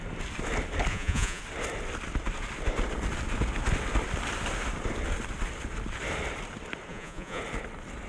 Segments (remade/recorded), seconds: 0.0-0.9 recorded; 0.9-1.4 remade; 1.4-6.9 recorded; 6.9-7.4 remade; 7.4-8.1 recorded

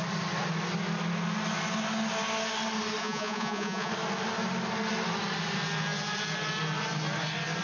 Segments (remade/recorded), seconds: 0.0-3.0 recorded; 3.0-3.9 remade; 3.9-7.6 recorded

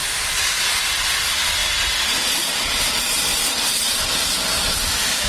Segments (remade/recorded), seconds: 0.0-5.3 recorded

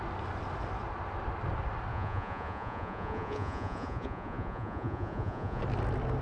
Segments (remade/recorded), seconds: 0.0-1.9 recorded; 1.9-5.6 remade; 5.6-6.2 recorded

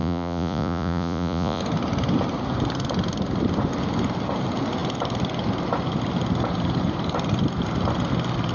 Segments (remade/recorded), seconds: 0.0-1.6 remade; 1.6-8.5 recorded

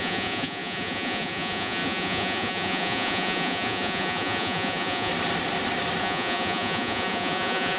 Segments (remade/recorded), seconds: 0.0-5.1 remade; 5.1-6.0 recorded; 6.0-7.8 remade

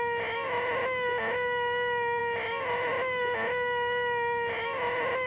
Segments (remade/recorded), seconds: 0.0-5.3 recorded

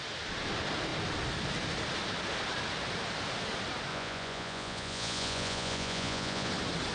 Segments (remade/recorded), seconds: 0.0-3.9 recorded; 3.9-6.5 remade; 6.5-6.9 recorded